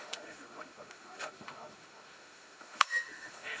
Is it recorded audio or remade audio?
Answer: remade